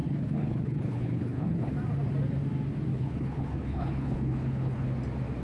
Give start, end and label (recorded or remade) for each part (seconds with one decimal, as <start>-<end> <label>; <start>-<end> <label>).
0.0-1.7 remade; 1.7-2.9 recorded; 2.9-4.9 remade; 4.9-5.4 recorded